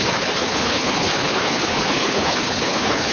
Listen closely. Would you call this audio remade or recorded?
remade